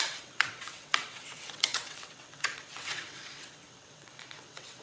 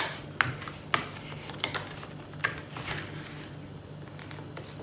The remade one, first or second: first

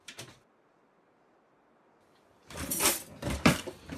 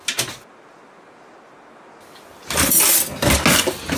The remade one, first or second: first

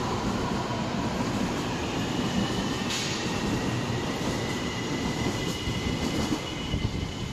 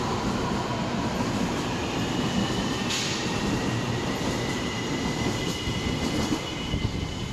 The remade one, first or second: first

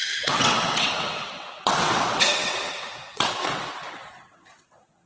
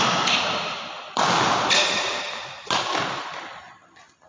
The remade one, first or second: first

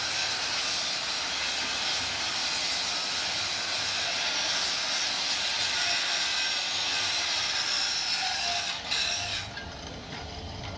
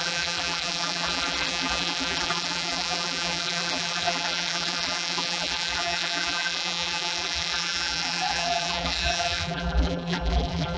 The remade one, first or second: second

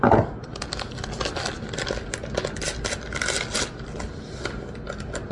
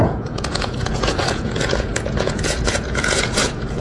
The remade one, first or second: second